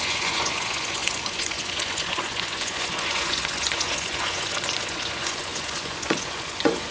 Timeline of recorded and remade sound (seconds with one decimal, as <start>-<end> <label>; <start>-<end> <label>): 0.0-6.9 remade

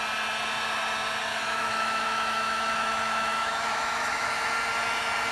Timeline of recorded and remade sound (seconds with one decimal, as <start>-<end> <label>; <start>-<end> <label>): 0.0-1.3 recorded; 1.3-4.5 remade; 4.5-5.3 recorded

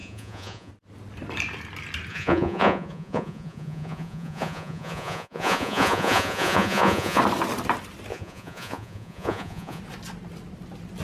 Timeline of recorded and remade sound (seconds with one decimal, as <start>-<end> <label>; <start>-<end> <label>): 0.0-0.7 remade; 0.7-2.1 recorded; 2.1-7.2 remade; 7.2-8.1 recorded; 8.1-9.8 remade; 9.8-11.0 recorded

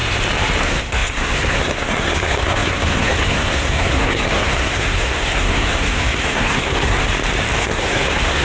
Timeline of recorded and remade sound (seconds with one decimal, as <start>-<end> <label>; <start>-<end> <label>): 0.0-0.6 recorded; 0.6-7.0 remade; 7.0-7.6 recorded; 7.6-8.4 remade